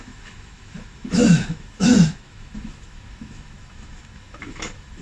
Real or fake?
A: fake